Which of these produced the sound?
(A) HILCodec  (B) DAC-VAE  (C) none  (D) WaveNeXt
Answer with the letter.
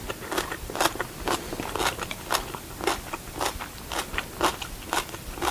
C